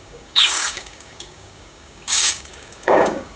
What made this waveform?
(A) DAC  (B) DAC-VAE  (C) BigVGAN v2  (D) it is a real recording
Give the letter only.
A